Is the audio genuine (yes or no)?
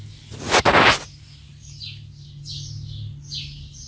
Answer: yes